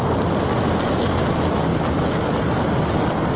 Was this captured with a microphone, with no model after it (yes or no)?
yes